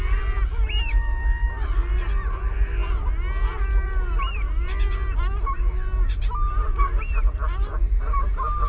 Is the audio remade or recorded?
recorded